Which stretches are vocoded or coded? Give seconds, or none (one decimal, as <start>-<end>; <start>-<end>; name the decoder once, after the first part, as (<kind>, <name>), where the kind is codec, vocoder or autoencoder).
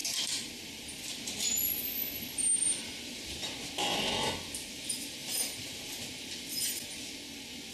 0.0-1.2 (vocoder, BigVGAN v2); 1.6-2.5; 5.2-6.0